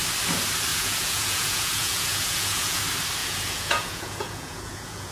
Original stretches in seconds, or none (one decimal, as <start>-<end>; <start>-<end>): 0.0-0.7; 2.8-3.2